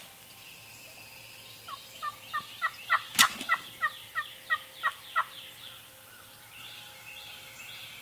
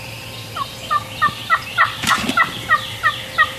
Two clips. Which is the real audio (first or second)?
first